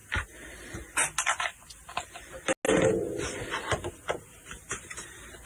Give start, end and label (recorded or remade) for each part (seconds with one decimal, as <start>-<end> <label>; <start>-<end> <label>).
0.0-3.3 recorded; 3.3-5.5 remade